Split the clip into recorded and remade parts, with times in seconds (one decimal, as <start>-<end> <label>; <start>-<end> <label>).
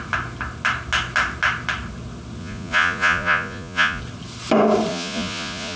0.0-2.4 recorded; 2.4-4.0 remade; 4.0-4.9 recorded; 4.9-5.8 remade